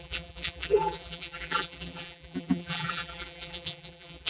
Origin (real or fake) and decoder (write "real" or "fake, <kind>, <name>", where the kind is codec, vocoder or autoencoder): fake, vocoder, BigVGAN v2